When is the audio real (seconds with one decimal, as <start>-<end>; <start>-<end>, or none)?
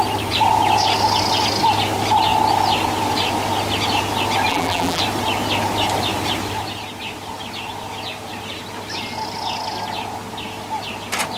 0.0-4.5; 5.0-11.4